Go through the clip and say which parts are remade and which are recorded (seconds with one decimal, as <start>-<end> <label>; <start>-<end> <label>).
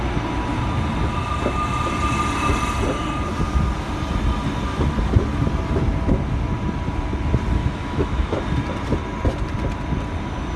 0.0-7.6 recorded; 7.6-8.4 remade; 8.4-10.6 recorded